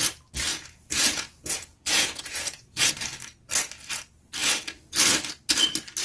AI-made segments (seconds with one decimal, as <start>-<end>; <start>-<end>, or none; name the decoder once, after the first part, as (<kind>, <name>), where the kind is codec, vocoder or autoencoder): 0.5-2.9 (vocoder, Vocos)